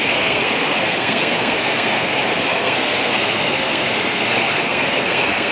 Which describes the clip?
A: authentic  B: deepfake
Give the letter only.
B